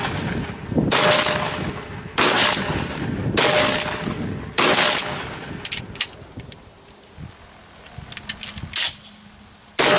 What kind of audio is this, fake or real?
real